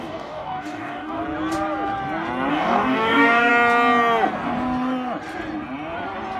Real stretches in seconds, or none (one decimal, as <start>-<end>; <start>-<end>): 1.2-2.5; 3.5-6.4